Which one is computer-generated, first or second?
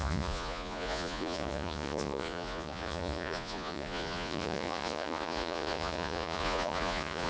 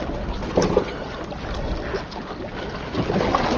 first